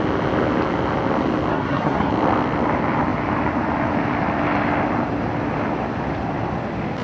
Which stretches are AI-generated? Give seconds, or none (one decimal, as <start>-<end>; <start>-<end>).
1.5-2.1